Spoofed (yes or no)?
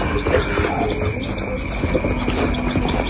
no